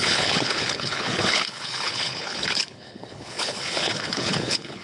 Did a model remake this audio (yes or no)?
yes